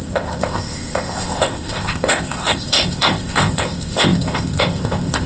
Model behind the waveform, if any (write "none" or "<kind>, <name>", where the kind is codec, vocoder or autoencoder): codec, ZipCodec